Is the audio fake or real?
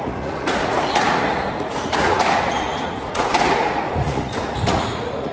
fake